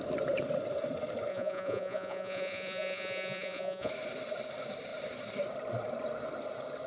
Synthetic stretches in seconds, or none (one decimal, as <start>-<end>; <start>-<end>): 1.3-3.9